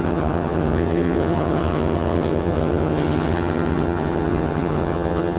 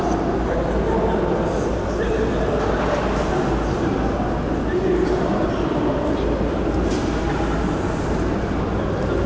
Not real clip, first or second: first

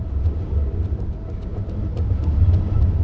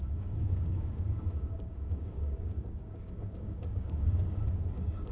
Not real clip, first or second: second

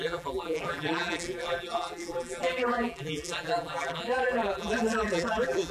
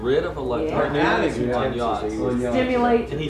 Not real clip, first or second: first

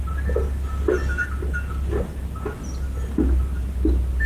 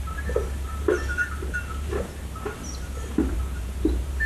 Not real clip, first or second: second